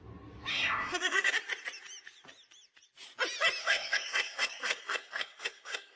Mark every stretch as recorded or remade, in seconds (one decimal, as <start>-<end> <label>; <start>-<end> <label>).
0.0-0.5 recorded; 0.5-1.3 remade; 1.3-3.6 recorded; 3.6-6.0 remade